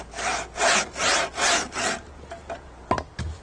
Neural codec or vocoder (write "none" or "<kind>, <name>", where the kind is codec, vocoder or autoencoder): none